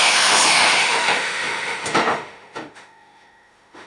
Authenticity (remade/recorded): remade